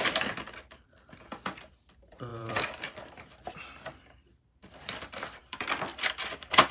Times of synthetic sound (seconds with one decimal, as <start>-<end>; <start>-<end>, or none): 0.0-6.7